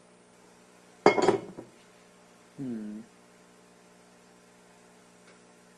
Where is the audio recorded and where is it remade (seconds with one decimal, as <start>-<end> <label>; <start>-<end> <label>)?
0.0-5.8 recorded